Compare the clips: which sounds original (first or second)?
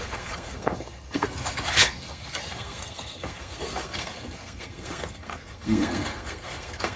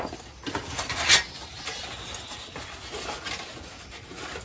second